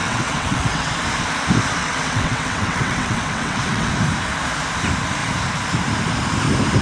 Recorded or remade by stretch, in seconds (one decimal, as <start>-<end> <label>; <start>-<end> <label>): 0.0-0.9 remade; 0.9-1.8 recorded; 1.8-3.9 remade; 3.9-6.8 recorded